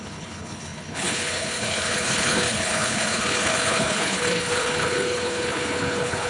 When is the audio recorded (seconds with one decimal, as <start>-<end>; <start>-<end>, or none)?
none